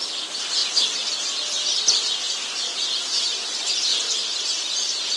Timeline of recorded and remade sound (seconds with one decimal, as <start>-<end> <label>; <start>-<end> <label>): 0.0-5.2 recorded